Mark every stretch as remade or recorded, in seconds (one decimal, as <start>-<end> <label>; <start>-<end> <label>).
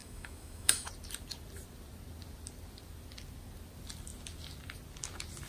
0.0-0.9 remade; 0.9-5.5 recorded